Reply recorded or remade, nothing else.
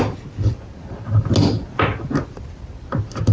recorded